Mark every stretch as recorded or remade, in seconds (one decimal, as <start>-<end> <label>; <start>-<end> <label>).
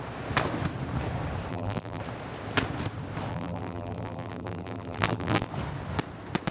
0.0-1.5 recorded; 1.5-2.0 remade; 2.0-3.3 recorded; 3.3-5.5 remade; 5.5-6.5 recorded